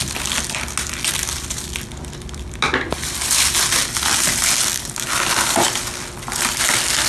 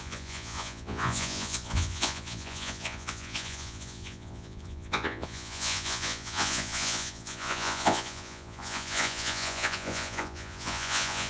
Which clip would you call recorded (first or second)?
first